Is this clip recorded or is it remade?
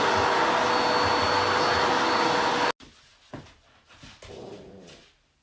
recorded